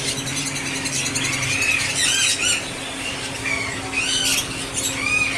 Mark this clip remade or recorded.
recorded